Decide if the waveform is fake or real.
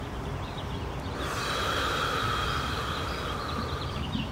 real